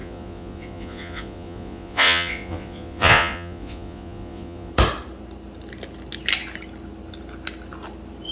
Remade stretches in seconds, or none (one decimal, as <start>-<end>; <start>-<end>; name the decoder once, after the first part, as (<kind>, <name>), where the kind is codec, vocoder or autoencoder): 0.0-4.7 (vocoder, Vocos)